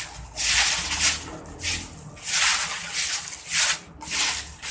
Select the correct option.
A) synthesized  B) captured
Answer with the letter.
B